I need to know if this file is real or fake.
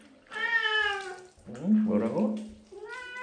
real